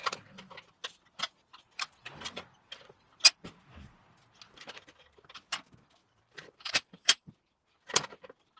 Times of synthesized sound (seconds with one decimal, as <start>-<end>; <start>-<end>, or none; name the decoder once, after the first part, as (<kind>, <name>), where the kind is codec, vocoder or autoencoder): 6.0-7.3 (vocoder, BigVGAN v2)